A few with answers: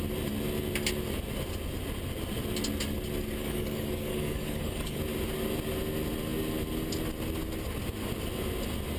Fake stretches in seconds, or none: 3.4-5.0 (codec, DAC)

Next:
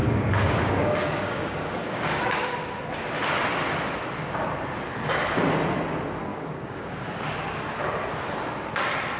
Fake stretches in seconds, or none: 0.0-2.2 (codec, DAC); 6.3-7.0

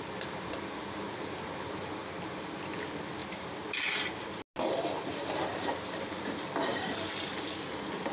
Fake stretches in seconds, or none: none